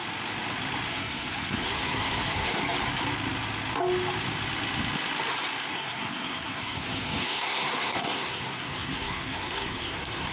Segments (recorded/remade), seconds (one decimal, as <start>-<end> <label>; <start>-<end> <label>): 0.0-0.9 recorded; 0.9-2.6 remade; 2.6-5.7 recorded; 5.7-10.3 remade